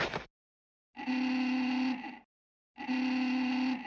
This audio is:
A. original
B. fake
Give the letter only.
A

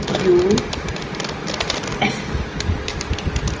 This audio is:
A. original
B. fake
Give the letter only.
A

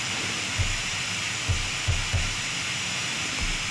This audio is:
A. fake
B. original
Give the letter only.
B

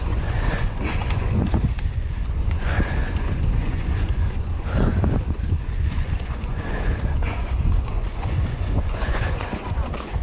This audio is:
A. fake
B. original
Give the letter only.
A